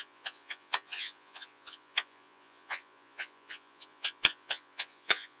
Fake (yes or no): yes